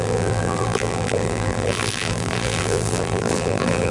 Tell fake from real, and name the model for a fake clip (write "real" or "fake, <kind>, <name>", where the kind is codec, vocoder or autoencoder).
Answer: fake, vocoder, BigVGAN v2